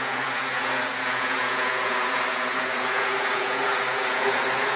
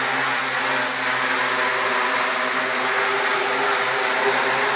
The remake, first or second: first